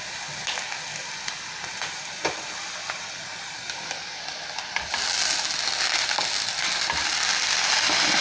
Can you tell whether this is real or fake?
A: real